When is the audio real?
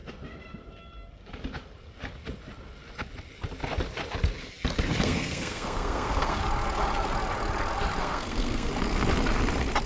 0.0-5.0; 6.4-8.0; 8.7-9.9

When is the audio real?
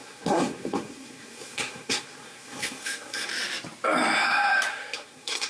3.3-4.7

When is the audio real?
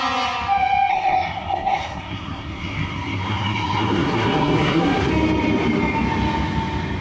0.0-0.9; 5.1-7.0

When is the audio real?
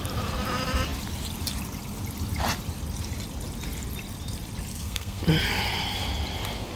0.0-4.7; 5.2-6.8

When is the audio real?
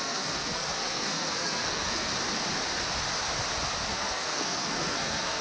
2.1-3.9